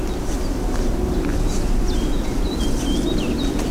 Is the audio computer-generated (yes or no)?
no